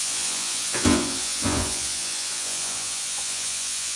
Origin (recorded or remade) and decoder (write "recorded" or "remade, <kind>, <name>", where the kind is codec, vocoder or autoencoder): remade, vocoder, Vocos